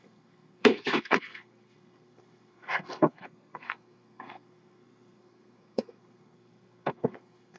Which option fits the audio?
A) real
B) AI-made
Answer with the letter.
B